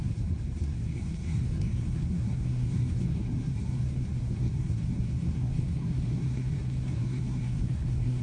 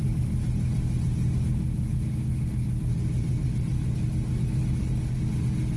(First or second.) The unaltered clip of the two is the second